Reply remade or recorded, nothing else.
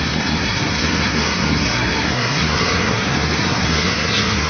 remade